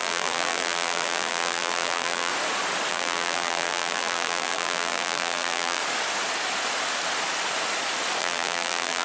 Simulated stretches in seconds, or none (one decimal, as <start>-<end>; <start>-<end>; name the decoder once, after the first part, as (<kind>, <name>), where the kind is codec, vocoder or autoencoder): 0.0-2.3 (vocoder, BigVGAN v2); 2.9-5.8; 8.2-9.0